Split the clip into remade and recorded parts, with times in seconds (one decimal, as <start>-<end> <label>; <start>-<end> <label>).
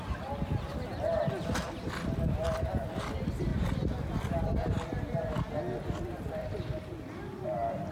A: 0.0-7.9 recorded